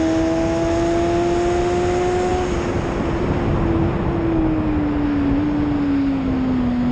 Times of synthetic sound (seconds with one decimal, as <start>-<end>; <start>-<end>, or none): none